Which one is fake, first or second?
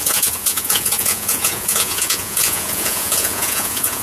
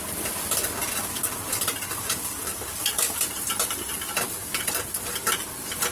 first